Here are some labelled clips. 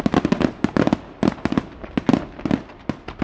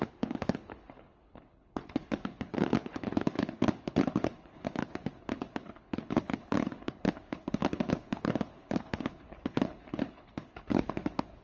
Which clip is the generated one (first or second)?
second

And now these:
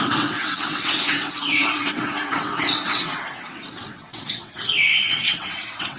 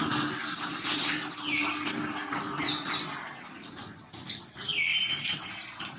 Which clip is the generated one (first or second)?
first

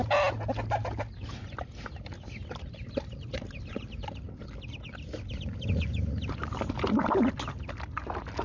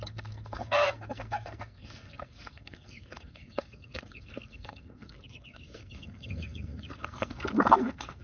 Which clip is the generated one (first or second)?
second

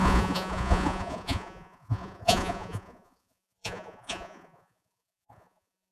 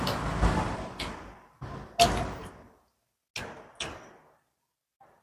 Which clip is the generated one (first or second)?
first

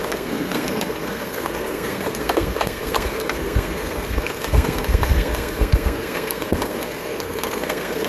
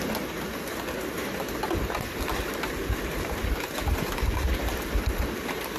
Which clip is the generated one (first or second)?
first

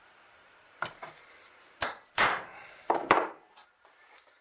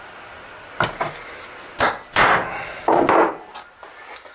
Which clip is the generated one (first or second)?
first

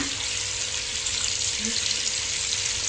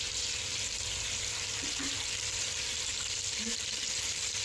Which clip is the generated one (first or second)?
second